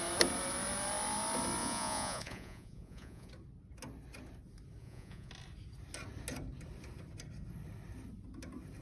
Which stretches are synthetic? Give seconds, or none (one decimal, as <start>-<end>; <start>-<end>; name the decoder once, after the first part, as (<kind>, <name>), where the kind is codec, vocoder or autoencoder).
1.6-3.3 (vocoder, Vocos); 4.8-5.3